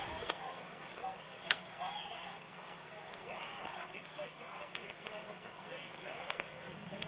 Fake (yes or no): yes